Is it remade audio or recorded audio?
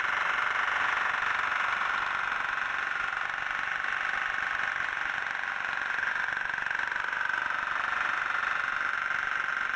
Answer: recorded